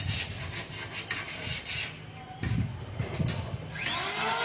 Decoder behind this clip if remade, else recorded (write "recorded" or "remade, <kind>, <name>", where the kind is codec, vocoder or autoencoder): recorded